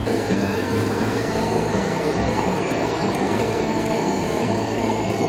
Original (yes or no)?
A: no